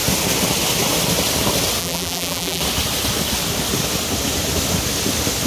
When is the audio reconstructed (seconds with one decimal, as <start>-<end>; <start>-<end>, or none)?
1.8-2.6